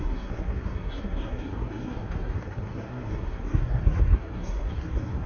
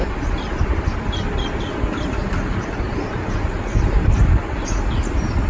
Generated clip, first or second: first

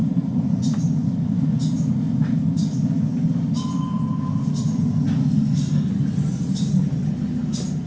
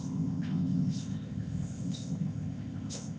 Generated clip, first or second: second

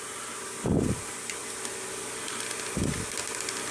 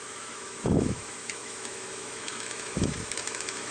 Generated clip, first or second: second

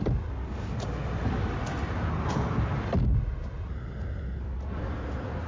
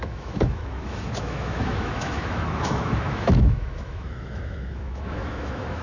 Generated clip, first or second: second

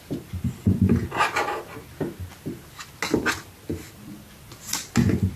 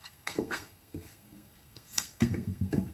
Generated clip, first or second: second